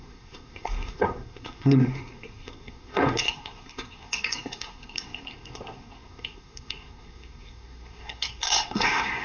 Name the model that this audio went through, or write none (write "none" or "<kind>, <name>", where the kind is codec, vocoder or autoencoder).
codec, SNAC